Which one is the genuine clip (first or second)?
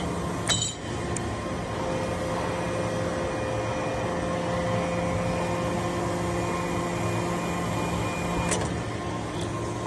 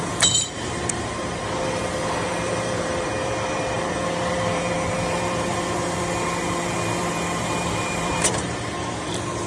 first